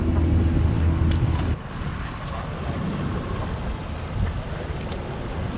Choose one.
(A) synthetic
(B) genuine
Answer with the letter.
B